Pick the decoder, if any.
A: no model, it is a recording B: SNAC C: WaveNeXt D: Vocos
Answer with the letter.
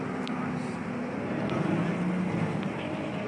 A